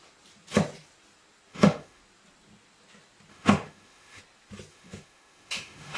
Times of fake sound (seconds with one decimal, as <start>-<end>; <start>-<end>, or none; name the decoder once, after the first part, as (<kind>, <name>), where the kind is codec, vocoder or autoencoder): 1.5-2.0 (autoencoder, DAC-VAE); 3.3-4.2; 4.7-6.0